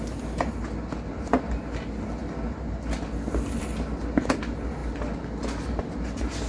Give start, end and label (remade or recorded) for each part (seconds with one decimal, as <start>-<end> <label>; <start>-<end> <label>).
0.0-6.5 recorded